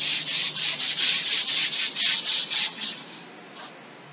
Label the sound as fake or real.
real